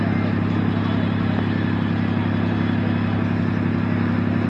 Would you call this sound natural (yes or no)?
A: yes